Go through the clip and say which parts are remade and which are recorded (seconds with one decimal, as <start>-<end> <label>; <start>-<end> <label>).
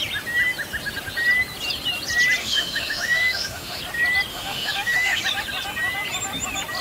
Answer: 0.0-2.4 recorded; 2.4-3.8 remade; 3.8-4.3 recorded; 4.3-5.2 remade; 5.2-6.8 recorded